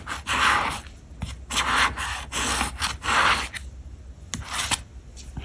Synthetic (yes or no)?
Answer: no